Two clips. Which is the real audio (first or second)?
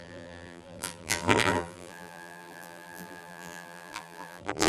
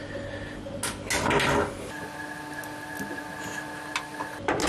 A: second